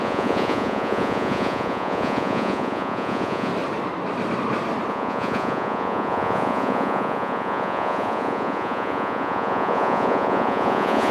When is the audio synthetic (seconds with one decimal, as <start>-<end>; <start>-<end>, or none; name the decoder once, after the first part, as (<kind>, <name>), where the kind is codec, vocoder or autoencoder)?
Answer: 0.0-3.5 (vocoder, Vocos); 4.9-11.1